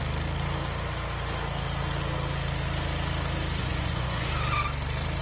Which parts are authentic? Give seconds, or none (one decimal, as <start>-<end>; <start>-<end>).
0.0-3.6; 4.3-5.2